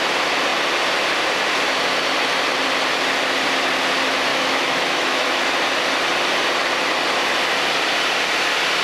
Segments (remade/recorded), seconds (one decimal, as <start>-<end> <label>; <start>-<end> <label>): 0.0-4.3 recorded; 4.3-5.5 remade; 5.5-8.8 recorded